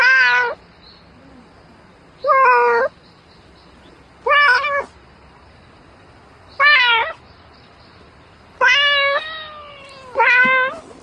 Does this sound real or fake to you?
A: real